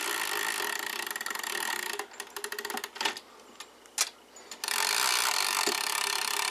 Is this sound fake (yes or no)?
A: no